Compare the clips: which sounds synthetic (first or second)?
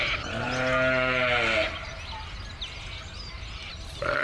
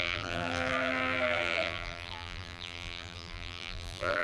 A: second